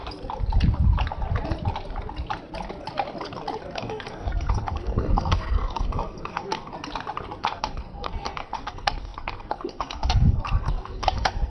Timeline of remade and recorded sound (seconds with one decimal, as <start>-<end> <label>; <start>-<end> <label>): 0.0-3.6 recorded; 3.6-6.7 remade; 6.7-7.4 recorded; 7.4-11.5 remade